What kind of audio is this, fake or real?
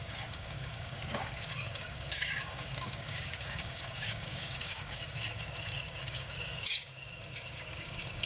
fake